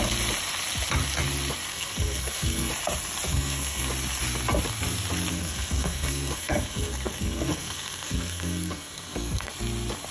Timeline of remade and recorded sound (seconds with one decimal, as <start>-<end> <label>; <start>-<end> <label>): 0.0-1.7 recorded; 1.7-2.7 remade; 2.7-3.3 recorded; 3.3-3.9 remade; 3.9-5.3 recorded; 5.3-9.5 remade; 9.5-10.1 recorded